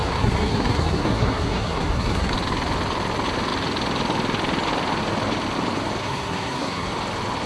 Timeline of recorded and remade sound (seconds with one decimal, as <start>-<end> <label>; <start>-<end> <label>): 0.0-2.3 remade; 2.3-6.0 recorded; 6.0-6.9 remade; 6.9-7.5 recorded